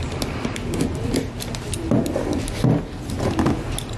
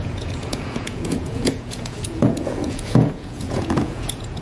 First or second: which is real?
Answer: first